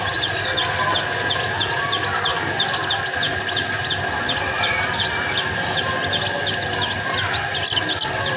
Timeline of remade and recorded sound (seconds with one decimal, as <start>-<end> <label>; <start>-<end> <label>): 0.0-8.4 recorded